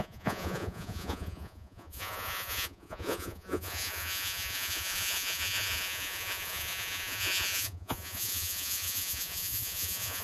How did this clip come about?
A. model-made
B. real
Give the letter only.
A